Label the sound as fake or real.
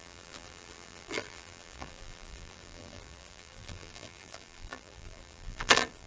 fake